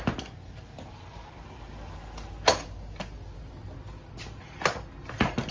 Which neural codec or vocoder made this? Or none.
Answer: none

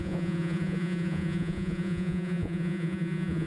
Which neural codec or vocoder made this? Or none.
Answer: vocoder, Vocos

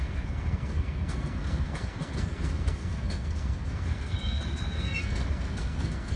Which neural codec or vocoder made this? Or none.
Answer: codec, SNAC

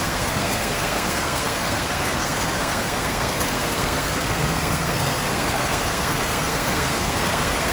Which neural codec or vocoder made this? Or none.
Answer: codec, SNAC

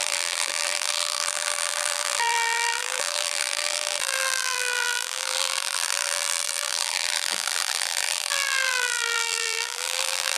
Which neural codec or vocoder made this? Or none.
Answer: vocoder, BigVGAN v2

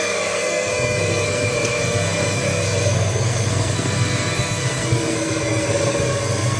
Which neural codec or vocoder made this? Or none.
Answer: codec, SNAC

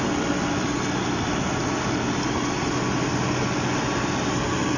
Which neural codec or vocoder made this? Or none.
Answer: none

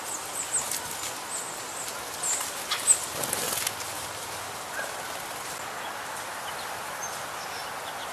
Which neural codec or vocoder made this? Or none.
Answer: none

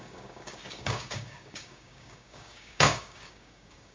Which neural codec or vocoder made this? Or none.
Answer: codec, DAC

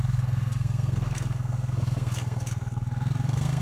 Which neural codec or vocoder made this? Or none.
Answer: codec, SNAC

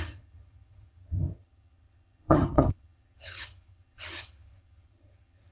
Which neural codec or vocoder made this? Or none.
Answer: vocoder, HiFi-GAN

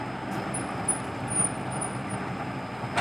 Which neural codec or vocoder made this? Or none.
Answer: none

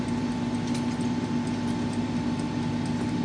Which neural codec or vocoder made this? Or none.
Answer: none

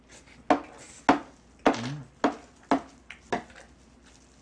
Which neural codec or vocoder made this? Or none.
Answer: none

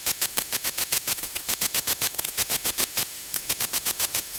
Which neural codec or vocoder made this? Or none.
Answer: autoencoder, DAC-VAE